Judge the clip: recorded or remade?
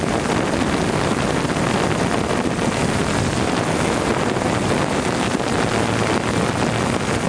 recorded